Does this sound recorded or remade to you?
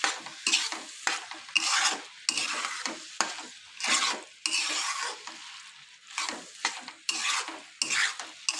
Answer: recorded